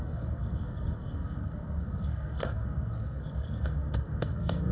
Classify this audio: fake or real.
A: fake